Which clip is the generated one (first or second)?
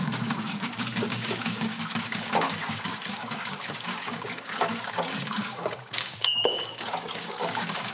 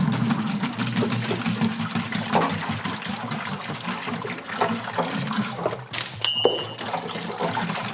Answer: first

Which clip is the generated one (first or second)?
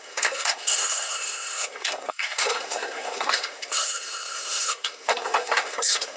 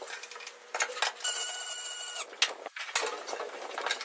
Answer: first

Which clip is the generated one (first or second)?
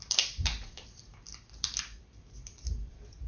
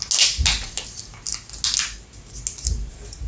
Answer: first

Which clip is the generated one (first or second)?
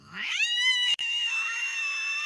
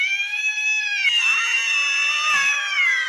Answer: first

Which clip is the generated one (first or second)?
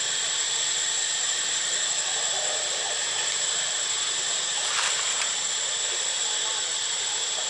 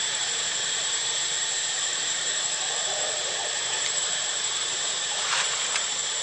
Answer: second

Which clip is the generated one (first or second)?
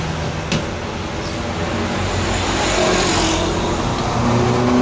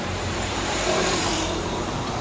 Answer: second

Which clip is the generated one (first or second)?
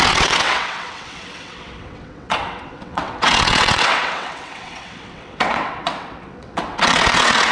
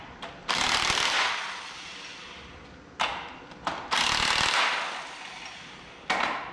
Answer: first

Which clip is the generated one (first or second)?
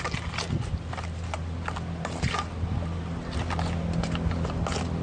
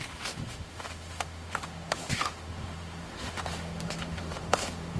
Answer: second